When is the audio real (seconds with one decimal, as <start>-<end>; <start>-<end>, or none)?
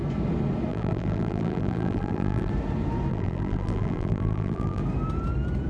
0.0-0.7; 2.5-3.1; 4.8-5.7